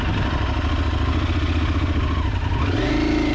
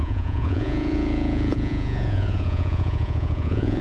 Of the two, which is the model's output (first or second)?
second